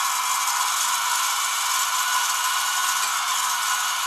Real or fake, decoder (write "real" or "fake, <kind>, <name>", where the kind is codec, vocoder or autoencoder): real